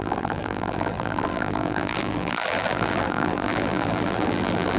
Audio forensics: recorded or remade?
remade